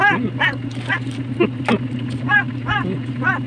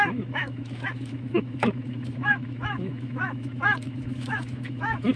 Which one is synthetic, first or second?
second